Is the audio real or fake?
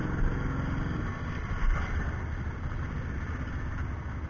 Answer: real